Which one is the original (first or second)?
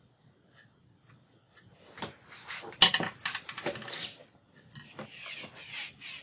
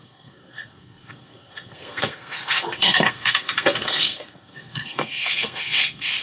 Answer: first